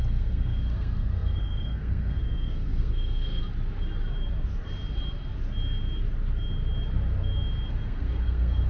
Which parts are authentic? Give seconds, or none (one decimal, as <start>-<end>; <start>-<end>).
3.4-7.7